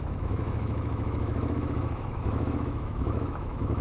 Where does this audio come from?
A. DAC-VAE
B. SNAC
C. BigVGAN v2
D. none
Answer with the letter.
A